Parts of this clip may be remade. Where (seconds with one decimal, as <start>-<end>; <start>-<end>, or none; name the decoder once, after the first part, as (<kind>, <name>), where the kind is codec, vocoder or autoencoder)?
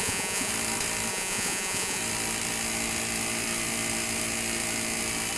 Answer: 0.0-0.5 (vocoder, Vocos); 1.1-2.0